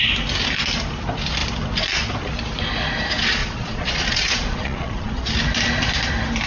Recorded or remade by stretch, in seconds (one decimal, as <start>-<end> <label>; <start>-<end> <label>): 0.0-3.4 recorded; 3.4-5.3 remade; 5.3-6.5 recorded